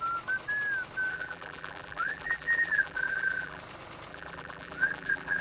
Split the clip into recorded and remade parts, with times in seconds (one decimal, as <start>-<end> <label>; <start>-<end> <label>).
0.0-1.1 recorded; 1.1-3.6 remade; 3.6-4.1 recorded; 4.1-5.4 remade